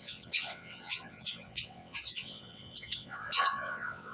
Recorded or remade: remade